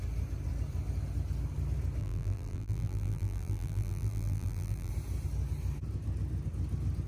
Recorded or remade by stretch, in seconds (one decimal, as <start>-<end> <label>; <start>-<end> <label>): 0.0-2.0 recorded; 2.0-4.9 remade; 4.9-7.1 recorded